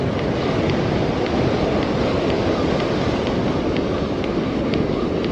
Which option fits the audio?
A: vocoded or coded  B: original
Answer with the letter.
B